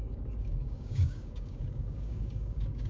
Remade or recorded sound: remade